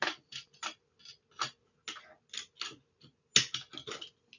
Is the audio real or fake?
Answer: real